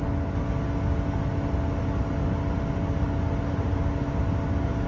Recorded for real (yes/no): yes